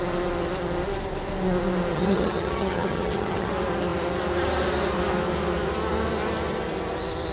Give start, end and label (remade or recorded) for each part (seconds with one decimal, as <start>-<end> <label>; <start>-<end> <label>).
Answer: 0.0-1.9 recorded; 1.9-3.5 remade; 3.5-7.3 recorded